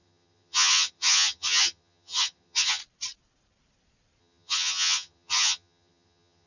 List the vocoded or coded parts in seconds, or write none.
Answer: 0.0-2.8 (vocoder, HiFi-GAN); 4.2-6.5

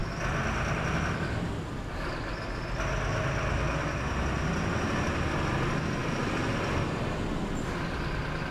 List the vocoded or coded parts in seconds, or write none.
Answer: 6.0-6.5 (vocoder, BigVGAN v2)

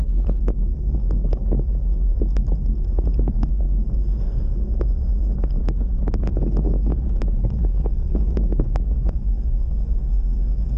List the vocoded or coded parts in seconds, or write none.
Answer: 0.0-5.6 (codec, SNAC); 6.3-6.9; 7.4-10.8

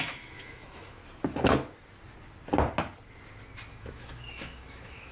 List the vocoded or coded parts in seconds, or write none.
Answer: 0.0-1.0 (autoencoder, DAC-VAE); 3.7-5.1

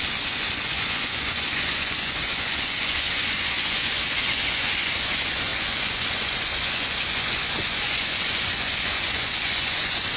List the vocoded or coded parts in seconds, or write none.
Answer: 0.0-10.2 (vocoder, Vocos)

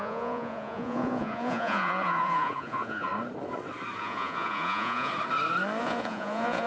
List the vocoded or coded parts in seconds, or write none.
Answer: 0.0-3.1 (vocoder, Vocos); 4.0-5.1; 5.8-6.7

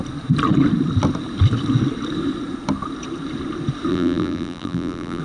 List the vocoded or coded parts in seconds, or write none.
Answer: 3.9-5.2 (vocoder, BigVGAN v2)